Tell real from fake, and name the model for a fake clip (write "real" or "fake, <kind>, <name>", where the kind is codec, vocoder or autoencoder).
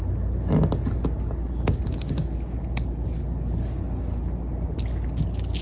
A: real